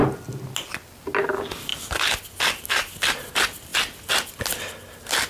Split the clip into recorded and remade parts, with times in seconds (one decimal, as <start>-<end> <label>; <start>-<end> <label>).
0.0-5.3 recorded